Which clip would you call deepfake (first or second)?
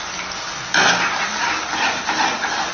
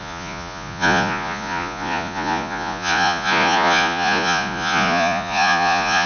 second